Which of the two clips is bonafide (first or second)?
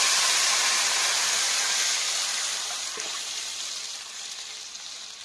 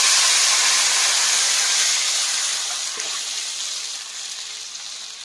second